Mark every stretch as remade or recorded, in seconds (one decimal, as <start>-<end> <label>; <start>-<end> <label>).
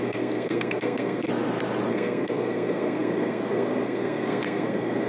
0.0-1.3 remade; 1.3-1.9 recorded; 1.9-5.1 remade